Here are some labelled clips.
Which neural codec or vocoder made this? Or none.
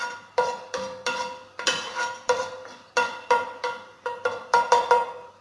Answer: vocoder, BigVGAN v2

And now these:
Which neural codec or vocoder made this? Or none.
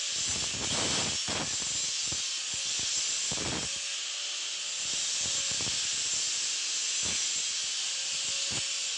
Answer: none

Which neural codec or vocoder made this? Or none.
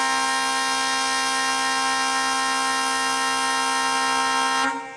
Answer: none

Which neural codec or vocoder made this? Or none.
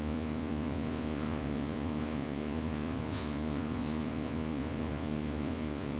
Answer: vocoder, Vocos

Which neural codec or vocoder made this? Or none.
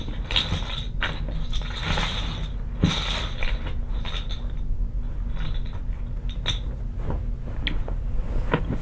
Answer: none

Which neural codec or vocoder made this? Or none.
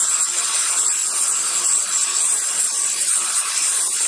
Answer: none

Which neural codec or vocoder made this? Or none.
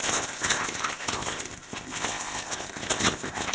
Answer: codec, ZipCodec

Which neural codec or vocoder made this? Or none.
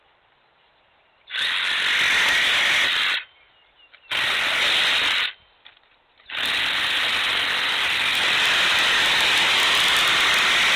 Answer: none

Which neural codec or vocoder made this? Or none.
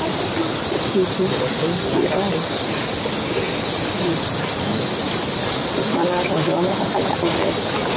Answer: none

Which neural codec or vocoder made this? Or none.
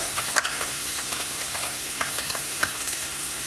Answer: codec, SNAC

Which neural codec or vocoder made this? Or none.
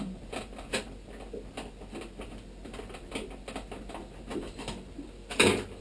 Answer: none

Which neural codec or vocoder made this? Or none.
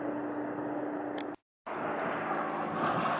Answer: none